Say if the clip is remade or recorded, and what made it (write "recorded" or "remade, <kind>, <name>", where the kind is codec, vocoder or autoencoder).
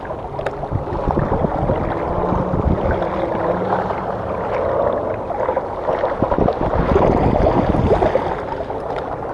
recorded